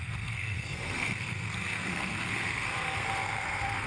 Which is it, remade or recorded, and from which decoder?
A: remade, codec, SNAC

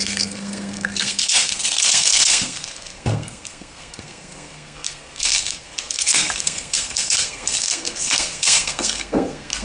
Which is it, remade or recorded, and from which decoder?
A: remade, codec, SNAC